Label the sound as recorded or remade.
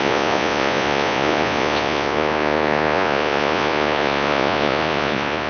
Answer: remade